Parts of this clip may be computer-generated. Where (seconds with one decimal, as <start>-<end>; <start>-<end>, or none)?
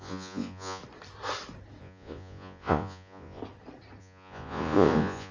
0.0-0.8; 1.8-3.4; 4.0-5.3